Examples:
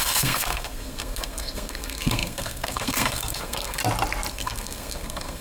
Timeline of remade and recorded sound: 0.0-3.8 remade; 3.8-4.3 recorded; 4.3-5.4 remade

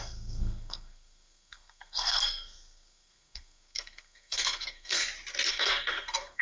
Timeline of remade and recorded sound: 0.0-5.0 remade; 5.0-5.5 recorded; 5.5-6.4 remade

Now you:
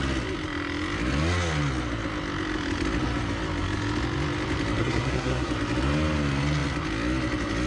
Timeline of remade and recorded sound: 0.0-4.8 recorded; 4.8-5.5 remade; 5.5-7.7 recorded

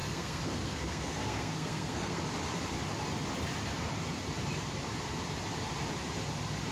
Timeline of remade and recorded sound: 0.0-2.2 remade; 2.2-6.7 recorded